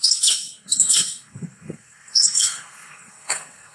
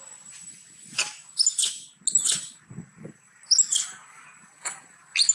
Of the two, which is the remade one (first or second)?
first